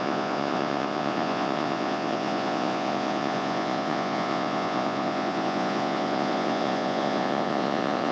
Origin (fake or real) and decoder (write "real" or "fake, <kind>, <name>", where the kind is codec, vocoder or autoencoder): fake, vocoder, Vocos